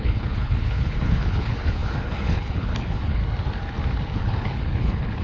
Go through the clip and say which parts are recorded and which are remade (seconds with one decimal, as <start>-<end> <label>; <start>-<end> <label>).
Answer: 0.0-3.2 remade; 3.2-4.2 recorded; 4.2-5.2 remade